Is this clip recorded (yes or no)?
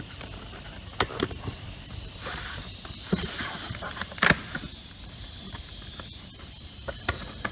no